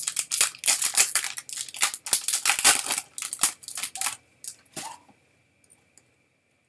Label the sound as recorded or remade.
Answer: recorded